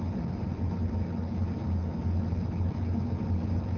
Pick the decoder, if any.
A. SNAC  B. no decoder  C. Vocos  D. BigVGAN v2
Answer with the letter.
B